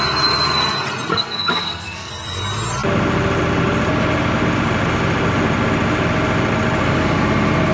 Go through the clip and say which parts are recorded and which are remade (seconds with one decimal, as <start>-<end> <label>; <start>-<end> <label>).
0.0-1.1 recorded; 1.1-2.1 remade; 2.1-7.7 recorded